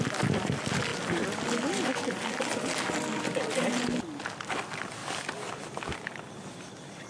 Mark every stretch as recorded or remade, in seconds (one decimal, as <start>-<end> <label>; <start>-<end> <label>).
0.0-7.1 recorded

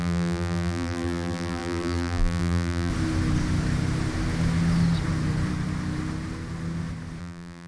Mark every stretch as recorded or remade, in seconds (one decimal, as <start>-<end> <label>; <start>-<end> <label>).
0.0-2.9 remade; 2.9-7.2 recorded; 7.2-7.7 remade

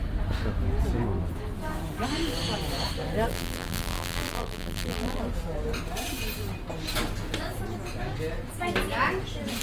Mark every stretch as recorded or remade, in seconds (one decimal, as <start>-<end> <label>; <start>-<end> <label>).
0.0-3.3 recorded; 3.3-5.2 remade; 5.2-9.6 recorded

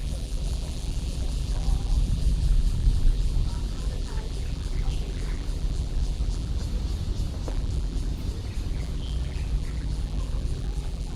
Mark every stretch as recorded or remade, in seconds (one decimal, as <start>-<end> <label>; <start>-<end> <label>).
0.0-6.6 remade; 6.6-7.5 recorded; 7.5-8.1 remade; 8.1-8.7 recorded; 8.7-11.2 remade

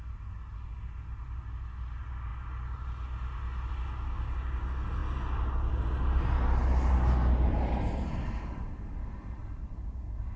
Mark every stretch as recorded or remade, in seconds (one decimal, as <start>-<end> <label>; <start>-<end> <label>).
0.0-8.1 recorded; 8.1-9.4 remade; 9.4-10.4 recorded

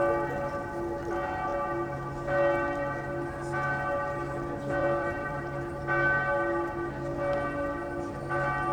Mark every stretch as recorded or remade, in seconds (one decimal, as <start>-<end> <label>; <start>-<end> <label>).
0.0-4.8 recorded; 4.8-5.4 remade; 5.4-8.7 recorded